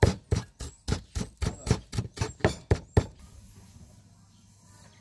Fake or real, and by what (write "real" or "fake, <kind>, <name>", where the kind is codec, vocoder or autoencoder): real